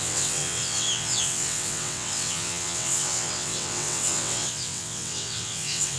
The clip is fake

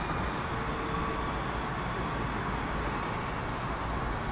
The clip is real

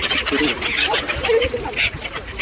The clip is real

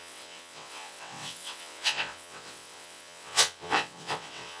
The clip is fake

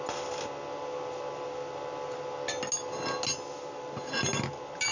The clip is real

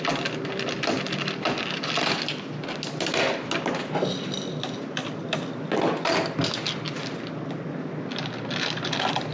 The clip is real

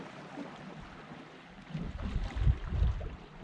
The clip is real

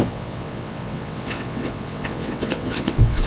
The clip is fake